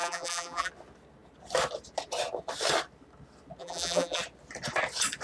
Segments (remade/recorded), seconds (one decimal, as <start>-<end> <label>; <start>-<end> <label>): 0.0-0.7 remade; 0.7-3.6 recorded; 3.6-4.2 remade; 4.2-5.2 recorded